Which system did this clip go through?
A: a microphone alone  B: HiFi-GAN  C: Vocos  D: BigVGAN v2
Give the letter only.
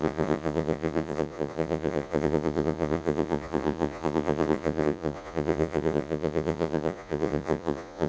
C